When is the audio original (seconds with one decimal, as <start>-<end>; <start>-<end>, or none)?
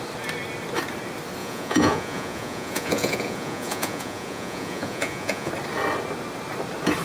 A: 0.0-1.4; 5.5-7.0